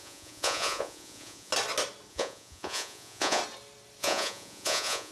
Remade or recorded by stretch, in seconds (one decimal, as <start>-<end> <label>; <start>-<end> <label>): 0.0-1.5 remade; 1.5-2.1 recorded; 2.1-3.4 remade; 3.4-4.0 recorded; 4.0-5.1 remade